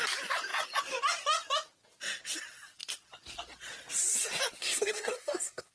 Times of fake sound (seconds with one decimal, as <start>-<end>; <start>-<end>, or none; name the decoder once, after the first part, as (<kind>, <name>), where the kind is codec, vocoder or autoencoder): 4.6-5.7 (codec, SNAC)